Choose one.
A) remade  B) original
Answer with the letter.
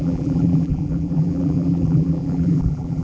A